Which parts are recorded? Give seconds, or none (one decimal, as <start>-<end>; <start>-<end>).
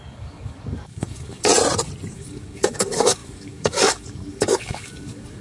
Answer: 1.5-2.1